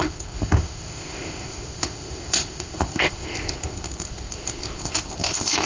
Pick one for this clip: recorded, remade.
remade